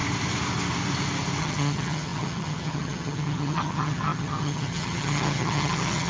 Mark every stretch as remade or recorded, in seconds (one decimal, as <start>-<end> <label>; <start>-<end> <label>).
0.0-1.4 recorded; 1.4-6.1 remade